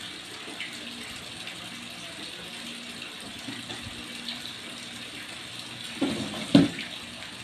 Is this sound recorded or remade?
recorded